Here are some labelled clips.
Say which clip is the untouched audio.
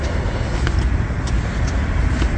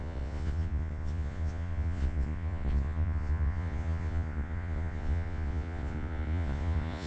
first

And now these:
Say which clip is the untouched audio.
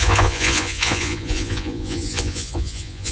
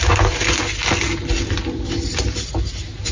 second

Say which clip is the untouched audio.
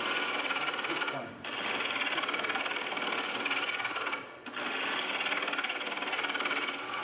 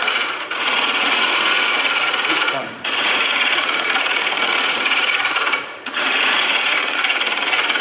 first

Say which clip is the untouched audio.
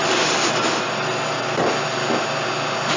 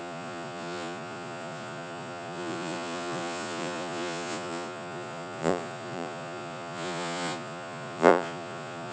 first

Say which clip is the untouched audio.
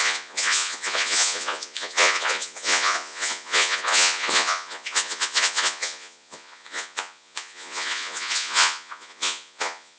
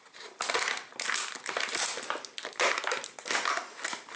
second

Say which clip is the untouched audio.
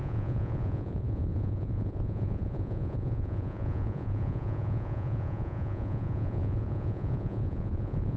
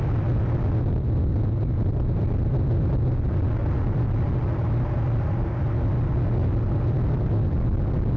second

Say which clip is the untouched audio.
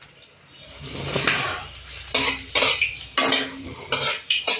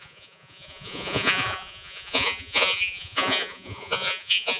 first